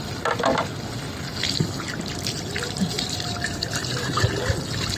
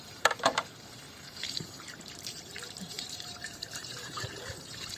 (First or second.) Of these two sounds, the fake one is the second